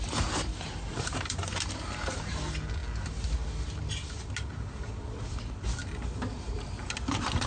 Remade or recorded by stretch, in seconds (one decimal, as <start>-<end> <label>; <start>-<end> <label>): 0.0-0.9 recorded; 0.9-1.4 remade; 1.4-5.8 recorded; 5.8-6.9 remade; 6.9-7.5 recorded